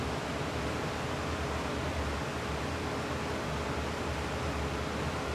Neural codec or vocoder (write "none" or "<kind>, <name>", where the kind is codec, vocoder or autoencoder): none